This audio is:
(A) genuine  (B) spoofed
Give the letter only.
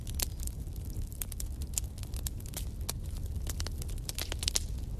A